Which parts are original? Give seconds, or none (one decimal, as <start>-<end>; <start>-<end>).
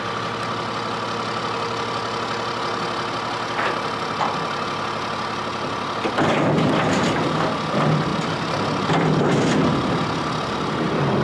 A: 0.0-11.2